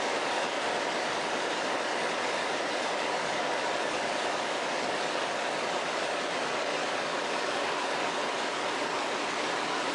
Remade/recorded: remade